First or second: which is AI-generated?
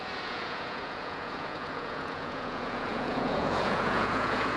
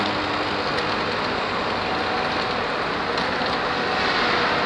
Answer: first